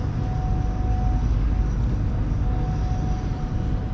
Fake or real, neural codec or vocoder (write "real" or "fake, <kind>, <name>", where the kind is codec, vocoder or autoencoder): real